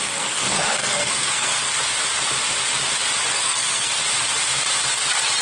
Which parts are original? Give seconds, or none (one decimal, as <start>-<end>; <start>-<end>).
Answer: 1.6-3.3; 4.0-5.4